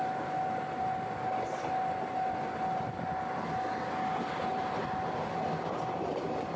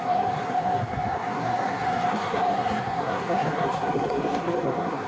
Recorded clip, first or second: first